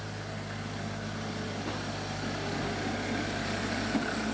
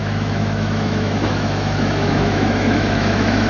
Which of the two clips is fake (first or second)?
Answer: second